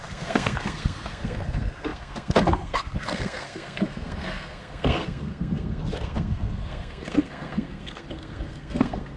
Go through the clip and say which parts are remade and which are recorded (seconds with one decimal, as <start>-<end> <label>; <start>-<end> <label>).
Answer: 0.0-9.2 remade